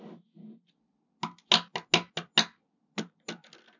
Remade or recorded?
recorded